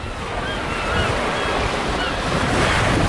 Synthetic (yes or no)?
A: no